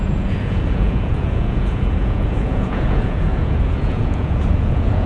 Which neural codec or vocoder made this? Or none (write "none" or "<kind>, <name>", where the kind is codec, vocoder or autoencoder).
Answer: vocoder, Vocos